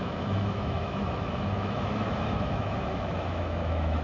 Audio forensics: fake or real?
fake